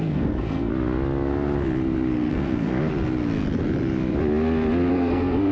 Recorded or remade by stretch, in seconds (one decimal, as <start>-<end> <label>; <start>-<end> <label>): 0.0-0.7 remade; 0.7-2.3 recorded; 2.3-2.7 remade; 2.7-4.9 recorded; 4.9-5.5 remade